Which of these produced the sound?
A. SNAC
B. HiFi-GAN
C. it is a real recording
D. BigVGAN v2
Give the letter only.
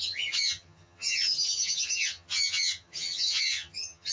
B